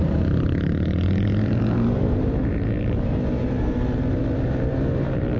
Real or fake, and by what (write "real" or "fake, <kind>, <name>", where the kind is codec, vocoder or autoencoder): fake, vocoder, BigVGAN v2